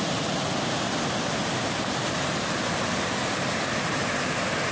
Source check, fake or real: real